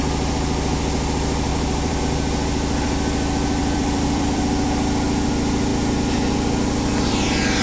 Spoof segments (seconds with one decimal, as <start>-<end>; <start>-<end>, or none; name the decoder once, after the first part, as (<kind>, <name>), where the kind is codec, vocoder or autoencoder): 1.5-2.0 (vocoder, BigVGAN v2); 3.6-4.4